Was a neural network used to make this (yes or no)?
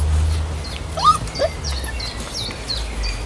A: no